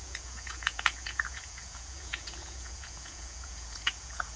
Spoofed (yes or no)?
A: yes